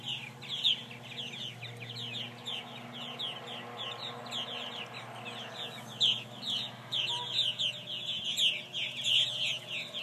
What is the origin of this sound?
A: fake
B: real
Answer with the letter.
B